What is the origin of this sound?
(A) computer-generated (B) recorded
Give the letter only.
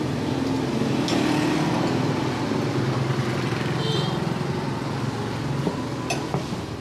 B